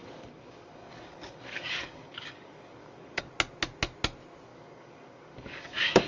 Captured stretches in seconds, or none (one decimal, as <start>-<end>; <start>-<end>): 3.3-4.5